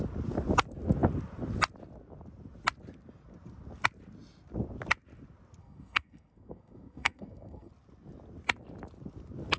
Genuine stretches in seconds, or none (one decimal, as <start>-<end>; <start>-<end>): 0.0-5.6; 7.7-9.6